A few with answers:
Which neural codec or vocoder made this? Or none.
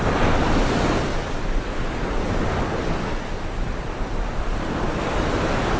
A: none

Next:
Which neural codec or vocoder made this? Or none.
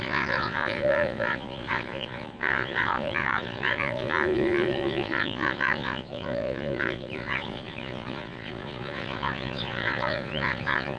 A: vocoder, Vocos